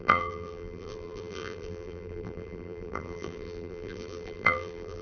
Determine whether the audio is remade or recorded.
remade